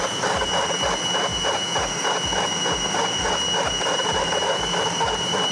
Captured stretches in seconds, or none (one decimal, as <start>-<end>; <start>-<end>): 0.0-5.5